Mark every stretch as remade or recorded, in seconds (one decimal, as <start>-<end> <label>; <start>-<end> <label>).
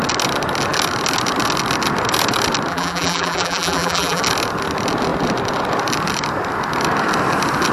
0.0-2.7 recorded; 2.7-4.2 remade; 4.2-7.7 recorded